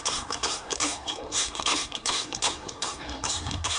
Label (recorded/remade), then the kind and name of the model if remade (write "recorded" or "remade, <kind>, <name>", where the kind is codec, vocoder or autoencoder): remade, codec, SNAC